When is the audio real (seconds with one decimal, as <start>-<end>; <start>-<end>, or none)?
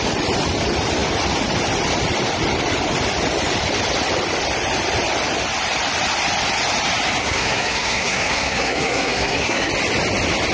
0.0-7.2; 9.7-10.5